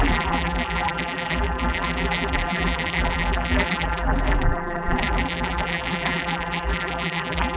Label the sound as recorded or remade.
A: remade